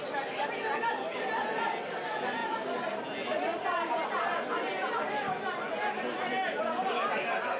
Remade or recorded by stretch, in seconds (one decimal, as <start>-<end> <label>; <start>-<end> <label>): 0.0-7.6 recorded